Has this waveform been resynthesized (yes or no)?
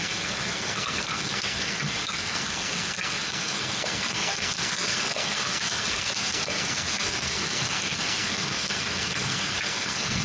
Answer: yes